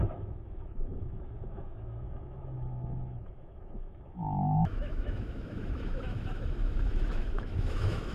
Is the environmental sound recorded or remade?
remade